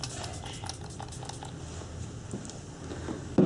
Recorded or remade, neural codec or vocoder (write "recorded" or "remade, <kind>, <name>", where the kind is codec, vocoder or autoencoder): recorded